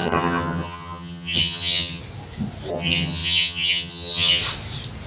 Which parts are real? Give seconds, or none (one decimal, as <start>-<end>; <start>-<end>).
2.0-2.7; 4.4-5.1